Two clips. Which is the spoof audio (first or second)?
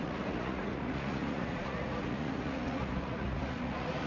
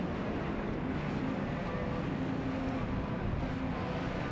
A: first